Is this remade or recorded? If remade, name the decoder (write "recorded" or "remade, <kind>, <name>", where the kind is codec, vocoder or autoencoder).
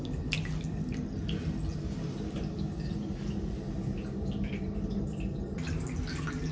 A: recorded